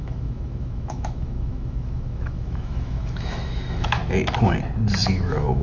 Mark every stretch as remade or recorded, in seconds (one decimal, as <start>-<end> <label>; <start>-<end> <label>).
0.0-4.0 remade; 4.0-4.9 recorded; 4.9-5.6 remade